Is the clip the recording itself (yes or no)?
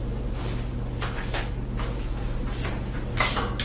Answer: yes